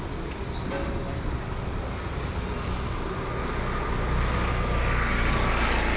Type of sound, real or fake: real